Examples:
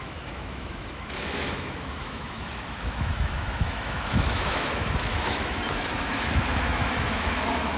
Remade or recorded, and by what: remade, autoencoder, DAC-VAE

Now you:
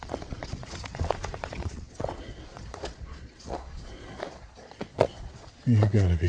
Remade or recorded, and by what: remade, vocoder, Vocos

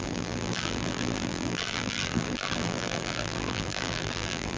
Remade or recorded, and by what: remade, vocoder, BigVGAN v2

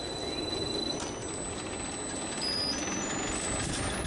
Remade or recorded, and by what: recorded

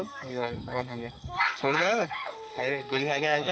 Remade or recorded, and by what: remade, codec, SNAC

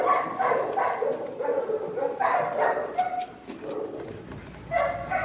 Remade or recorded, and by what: recorded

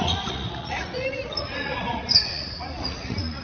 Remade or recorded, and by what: remade, vocoder, Vocos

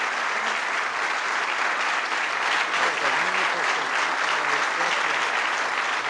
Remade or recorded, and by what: recorded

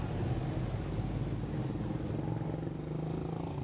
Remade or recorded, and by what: recorded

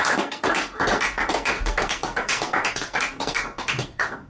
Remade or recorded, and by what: remade, codec, SNAC